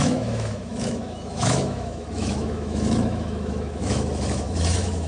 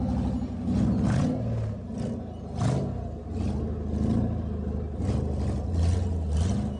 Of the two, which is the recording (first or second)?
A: second